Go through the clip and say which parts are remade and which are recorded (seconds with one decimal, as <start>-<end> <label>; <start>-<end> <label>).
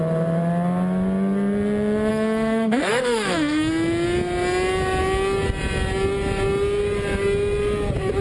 0.0-2.1 recorded; 2.1-3.7 remade; 3.7-8.2 recorded